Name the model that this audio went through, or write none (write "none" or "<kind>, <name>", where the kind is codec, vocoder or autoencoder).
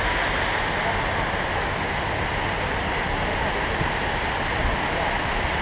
none